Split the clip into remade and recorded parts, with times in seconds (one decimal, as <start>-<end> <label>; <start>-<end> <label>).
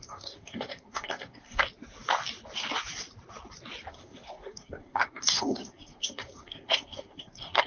0.0-1.6 remade; 1.6-3.9 recorded; 3.9-7.7 remade